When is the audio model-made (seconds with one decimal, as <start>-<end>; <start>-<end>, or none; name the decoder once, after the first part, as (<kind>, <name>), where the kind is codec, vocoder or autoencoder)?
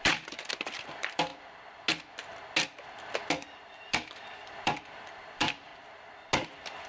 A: 0.0-1.3 (vocoder, BigVGAN v2); 3.6-5.7; 6.5-6.9